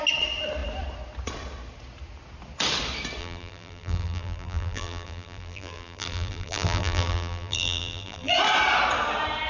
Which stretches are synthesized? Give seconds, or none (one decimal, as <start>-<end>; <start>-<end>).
3.2-8.3